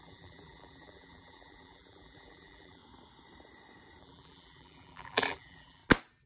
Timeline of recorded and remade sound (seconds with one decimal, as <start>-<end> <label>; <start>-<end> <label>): 0.0-2.8 remade; 2.8-4.0 recorded; 4.0-5.8 remade; 5.8-6.3 recorded